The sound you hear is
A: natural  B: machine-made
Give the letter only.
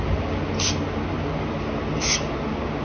A